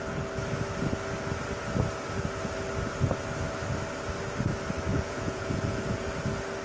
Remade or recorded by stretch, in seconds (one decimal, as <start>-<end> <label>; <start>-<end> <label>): 0.0-4.9 recorded; 4.9-6.1 remade; 6.1-6.6 recorded